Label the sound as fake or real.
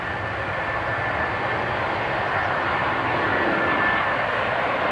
real